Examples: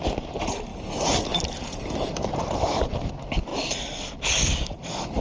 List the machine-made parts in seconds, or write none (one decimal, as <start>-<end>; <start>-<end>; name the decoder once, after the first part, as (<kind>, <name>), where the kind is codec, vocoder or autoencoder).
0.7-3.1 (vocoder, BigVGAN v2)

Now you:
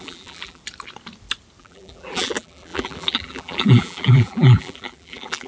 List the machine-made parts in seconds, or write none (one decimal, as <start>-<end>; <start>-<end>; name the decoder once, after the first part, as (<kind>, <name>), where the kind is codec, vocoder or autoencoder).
0.0-0.6 (vocoder, BigVGAN v2); 1.6-5.5

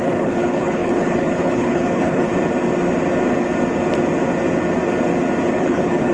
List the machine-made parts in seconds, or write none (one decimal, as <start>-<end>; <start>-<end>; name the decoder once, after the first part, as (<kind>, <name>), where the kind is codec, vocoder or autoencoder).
0.0-2.3 (codec, HILCodec); 5.6-6.1